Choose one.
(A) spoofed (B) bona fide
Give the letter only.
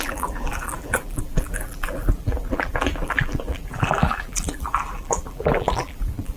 A